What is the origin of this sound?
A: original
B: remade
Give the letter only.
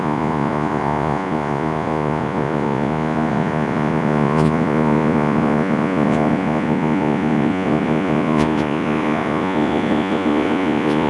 B